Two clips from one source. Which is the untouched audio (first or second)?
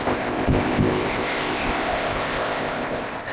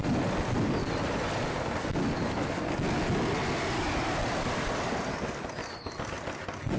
second